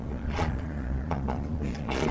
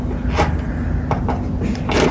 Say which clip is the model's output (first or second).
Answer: first